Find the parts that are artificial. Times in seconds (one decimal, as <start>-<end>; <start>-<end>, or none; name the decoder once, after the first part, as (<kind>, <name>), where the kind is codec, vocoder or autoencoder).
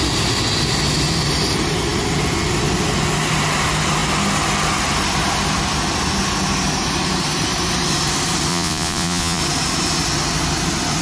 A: 8.5-9.4 (vocoder, Vocos)